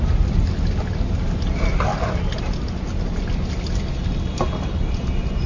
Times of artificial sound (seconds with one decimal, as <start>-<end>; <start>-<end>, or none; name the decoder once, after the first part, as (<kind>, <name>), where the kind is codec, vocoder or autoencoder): 0.0-1.9 (vocoder, BigVGAN v2); 2.4-5.5